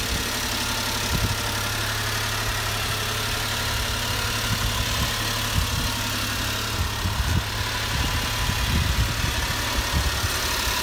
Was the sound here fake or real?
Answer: real